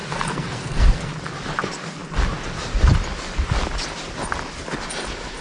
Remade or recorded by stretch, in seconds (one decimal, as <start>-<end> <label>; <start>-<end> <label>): 0.0-1.1 remade; 1.1-5.4 recorded